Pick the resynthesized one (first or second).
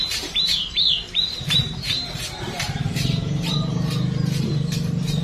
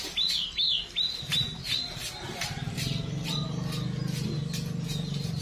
first